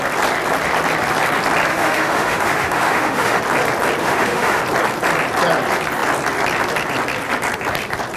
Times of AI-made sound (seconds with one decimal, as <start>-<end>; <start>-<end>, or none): 1.7-3.4; 4.0-4.6